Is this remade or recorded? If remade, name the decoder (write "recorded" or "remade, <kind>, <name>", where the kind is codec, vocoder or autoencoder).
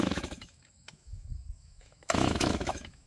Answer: remade, autoencoder, DAC-VAE